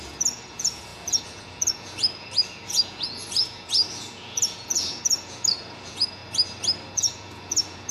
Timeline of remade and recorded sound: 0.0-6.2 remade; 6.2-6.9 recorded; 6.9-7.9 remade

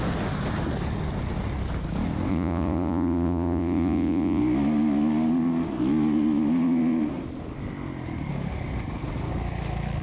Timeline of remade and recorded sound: 0.0-2.3 recorded; 2.3-4.4 remade; 4.4-10.0 recorded

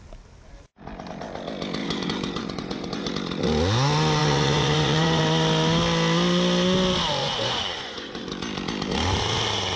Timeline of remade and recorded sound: 0.0-1.8 recorded; 1.8-3.1 remade; 3.1-4.2 recorded; 4.2-5.2 remade; 5.2-7.2 recorded; 7.2-8.3 remade; 8.3-9.8 recorded

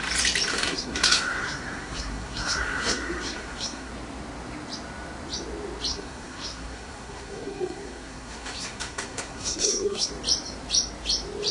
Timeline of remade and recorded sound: 0.0-0.5 recorded; 0.5-3.9 remade; 3.9-5.9 recorded; 5.9-10.1 remade; 10.1-11.5 recorded

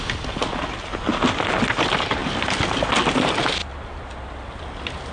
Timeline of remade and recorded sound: 0.0-1.1 recorded; 1.1-1.8 remade; 1.8-2.2 recorded; 2.2-3.1 remade; 3.1-5.1 recorded